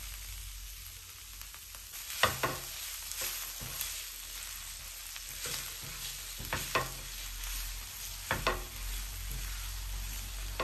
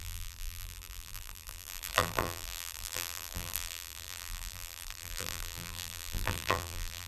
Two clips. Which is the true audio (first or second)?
first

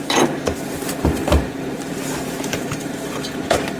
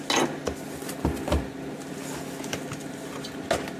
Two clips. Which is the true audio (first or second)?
second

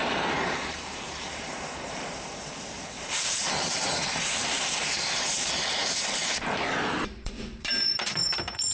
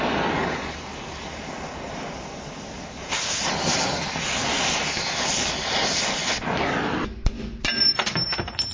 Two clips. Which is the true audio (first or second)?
second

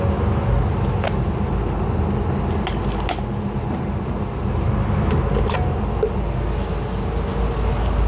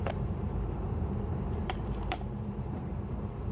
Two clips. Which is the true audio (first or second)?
first